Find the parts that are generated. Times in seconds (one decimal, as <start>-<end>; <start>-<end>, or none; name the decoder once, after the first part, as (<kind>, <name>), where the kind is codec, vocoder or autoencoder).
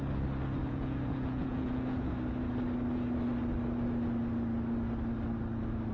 0.6-2.1 (vocoder, Vocos)